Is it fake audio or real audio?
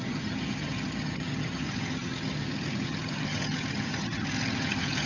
fake